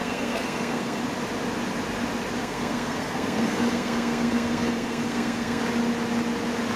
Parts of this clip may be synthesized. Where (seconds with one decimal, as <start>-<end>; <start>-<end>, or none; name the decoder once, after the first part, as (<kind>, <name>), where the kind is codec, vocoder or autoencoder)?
0.0-1.0 (codec, SNAC); 2.4-5.6